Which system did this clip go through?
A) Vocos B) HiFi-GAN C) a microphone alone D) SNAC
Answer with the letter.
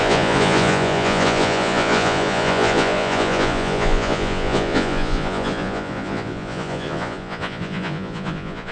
A